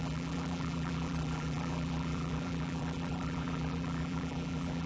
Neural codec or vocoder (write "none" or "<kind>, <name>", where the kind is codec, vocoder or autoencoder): vocoder, BigVGAN v2